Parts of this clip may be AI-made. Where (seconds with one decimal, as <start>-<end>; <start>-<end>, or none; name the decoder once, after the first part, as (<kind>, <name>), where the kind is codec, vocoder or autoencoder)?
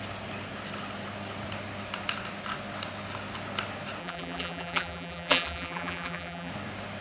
4.0-6.5 (vocoder, BigVGAN v2)